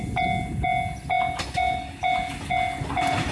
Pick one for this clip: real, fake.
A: real